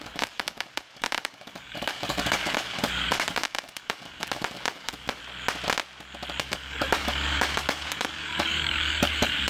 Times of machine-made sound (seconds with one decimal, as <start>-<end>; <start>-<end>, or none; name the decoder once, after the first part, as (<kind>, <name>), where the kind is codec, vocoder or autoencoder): 0.0-5.2 (codec, DAC); 6.4-9.5

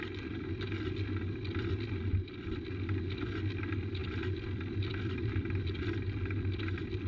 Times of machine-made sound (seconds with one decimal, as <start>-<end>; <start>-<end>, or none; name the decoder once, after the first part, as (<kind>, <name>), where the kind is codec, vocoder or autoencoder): none

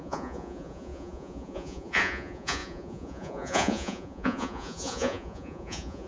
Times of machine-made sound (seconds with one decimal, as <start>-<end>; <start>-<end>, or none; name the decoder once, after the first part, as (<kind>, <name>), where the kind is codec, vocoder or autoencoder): 0.0-6.1 (vocoder, Vocos)

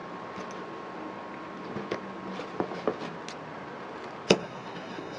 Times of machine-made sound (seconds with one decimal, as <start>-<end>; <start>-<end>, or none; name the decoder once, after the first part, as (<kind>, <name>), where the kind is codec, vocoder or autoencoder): 4.4-5.2 (codec, SNAC)

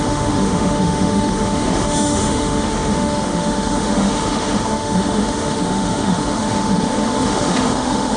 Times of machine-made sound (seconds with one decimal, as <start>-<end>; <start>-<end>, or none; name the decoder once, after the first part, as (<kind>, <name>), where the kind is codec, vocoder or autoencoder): 0.0-8.2 (autoencoder, DAC-VAE)

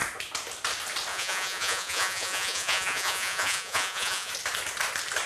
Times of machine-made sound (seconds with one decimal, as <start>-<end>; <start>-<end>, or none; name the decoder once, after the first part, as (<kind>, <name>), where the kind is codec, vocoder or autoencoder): 1.1-4.3 (vocoder, Vocos)